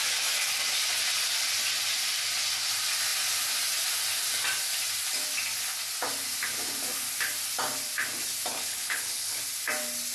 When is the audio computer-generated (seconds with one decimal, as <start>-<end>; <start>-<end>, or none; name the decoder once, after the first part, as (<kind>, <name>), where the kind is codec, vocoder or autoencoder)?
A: 8.5-9.4 (codec, HILCodec)